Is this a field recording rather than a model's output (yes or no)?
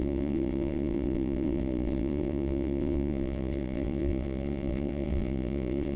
no